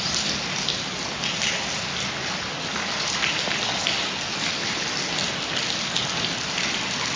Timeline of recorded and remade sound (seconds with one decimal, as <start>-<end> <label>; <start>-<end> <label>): 0.0-7.2 recorded